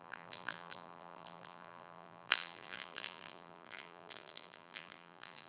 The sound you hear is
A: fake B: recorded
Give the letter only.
A